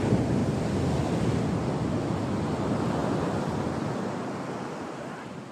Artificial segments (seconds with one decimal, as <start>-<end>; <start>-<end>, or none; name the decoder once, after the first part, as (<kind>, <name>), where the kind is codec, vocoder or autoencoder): 0.4-2.0 (vocoder, BigVGAN v2); 3.0-3.7